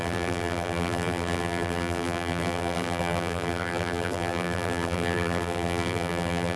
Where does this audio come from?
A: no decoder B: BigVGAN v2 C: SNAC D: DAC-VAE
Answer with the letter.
B